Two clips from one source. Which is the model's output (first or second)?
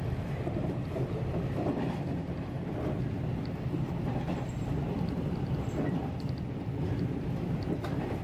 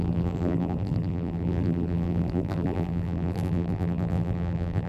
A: second